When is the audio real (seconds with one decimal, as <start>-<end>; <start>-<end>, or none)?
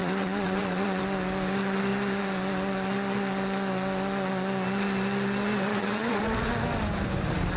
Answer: 1.0-5.7; 6.5-7.6